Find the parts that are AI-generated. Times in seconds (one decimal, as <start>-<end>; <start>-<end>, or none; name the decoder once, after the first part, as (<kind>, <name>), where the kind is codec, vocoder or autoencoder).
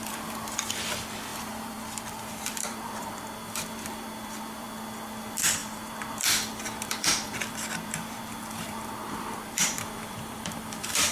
0.0-11.1 (vocoder, BigVGAN v2)